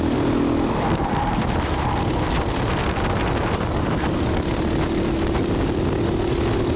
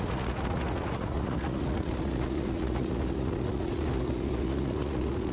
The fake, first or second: second